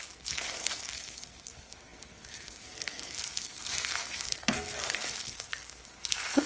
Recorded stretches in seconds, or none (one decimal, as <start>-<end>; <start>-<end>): none